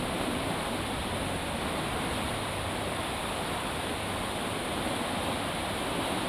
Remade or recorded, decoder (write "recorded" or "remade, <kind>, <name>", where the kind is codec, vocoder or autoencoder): recorded